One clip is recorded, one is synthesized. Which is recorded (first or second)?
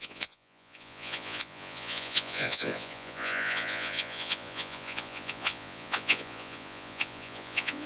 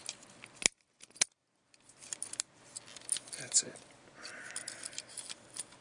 second